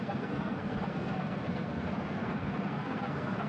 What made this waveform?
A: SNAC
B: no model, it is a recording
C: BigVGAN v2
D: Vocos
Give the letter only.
A